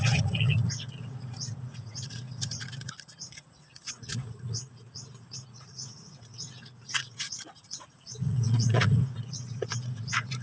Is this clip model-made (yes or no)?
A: yes